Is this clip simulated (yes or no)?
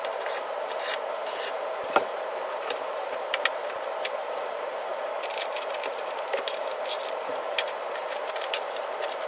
yes